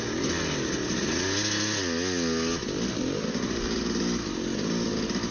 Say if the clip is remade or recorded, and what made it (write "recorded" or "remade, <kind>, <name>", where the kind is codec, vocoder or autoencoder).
recorded